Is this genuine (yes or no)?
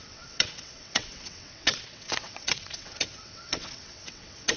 no